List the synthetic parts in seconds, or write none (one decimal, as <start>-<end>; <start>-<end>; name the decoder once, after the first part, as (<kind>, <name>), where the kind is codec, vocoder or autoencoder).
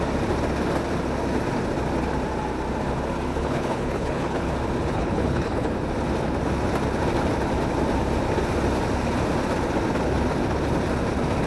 3.3-4.5 (codec, HILCodec); 4.9-5.7